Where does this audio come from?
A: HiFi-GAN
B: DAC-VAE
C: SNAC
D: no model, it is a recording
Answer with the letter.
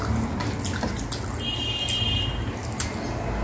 D